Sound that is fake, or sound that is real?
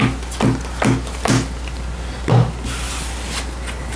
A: real